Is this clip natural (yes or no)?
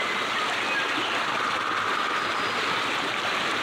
yes